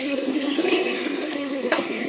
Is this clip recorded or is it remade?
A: remade